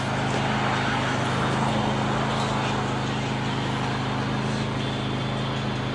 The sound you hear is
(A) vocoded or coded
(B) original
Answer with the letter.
B